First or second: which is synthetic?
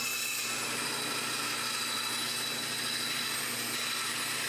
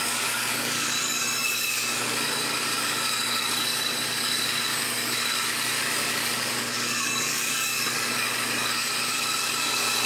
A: second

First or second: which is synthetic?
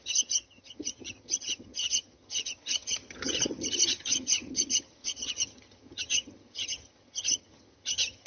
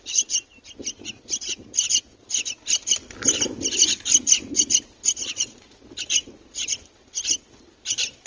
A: first